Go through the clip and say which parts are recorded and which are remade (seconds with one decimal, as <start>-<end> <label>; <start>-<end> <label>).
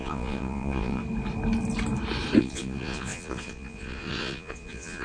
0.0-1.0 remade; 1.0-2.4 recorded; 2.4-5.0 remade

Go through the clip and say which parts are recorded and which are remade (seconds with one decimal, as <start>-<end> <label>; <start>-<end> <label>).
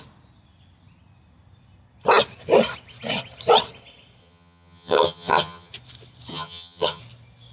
0.0-4.2 recorded; 4.2-5.7 remade; 5.7-6.3 recorded; 6.3-7.0 remade; 7.0-7.5 recorded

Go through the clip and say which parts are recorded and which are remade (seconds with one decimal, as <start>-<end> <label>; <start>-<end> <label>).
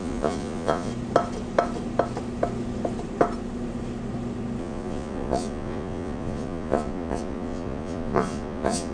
0.0-0.9 remade; 0.9-4.6 recorded; 4.6-8.9 remade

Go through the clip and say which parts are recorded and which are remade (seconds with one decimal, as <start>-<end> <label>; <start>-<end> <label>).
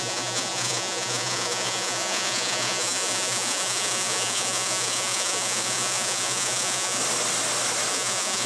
0.0-7.0 remade; 7.0-7.9 recorded; 7.9-8.5 remade